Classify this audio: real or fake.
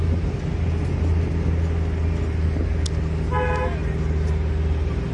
real